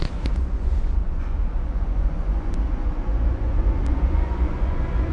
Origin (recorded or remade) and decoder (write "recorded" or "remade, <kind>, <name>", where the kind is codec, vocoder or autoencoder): remade, vocoder, Vocos